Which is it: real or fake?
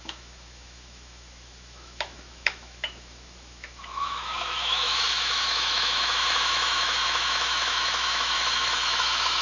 fake